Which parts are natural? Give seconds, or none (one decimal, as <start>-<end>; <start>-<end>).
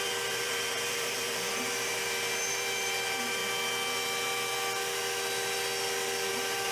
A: 3.4-6.3